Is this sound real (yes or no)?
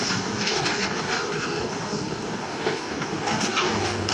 no